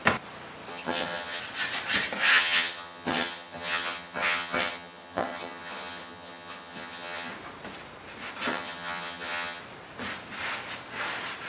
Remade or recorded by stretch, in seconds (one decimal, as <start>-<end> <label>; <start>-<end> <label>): 0.0-0.7 recorded; 0.7-1.4 remade; 1.4-2.3 recorded; 2.3-7.3 remade; 7.3-8.5 recorded; 8.5-9.6 remade; 9.6-11.5 recorded